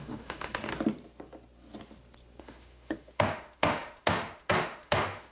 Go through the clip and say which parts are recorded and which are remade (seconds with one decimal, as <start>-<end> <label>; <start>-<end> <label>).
0.0-0.7 remade; 0.7-2.4 recorded; 2.4-5.3 remade